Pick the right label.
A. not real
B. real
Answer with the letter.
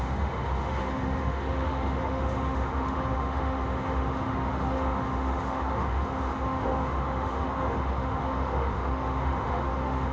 A